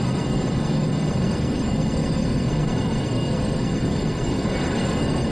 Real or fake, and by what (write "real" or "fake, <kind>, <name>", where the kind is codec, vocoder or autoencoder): fake, codec, SNAC